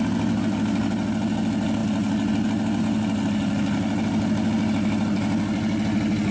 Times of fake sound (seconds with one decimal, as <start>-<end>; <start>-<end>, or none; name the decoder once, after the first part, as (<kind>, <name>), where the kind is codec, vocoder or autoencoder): none